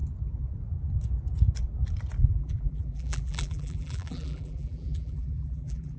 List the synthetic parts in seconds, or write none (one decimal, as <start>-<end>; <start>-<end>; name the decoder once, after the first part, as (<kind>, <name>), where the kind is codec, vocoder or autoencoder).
2.2-6.0 (vocoder, BigVGAN v2)